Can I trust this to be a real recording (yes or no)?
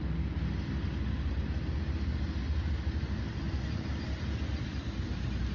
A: yes